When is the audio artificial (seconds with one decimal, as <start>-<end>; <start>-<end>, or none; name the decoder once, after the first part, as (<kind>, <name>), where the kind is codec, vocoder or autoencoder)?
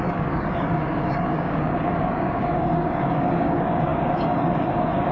0.0-5.1 (codec, DAC)